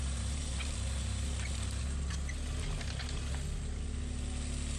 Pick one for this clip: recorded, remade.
recorded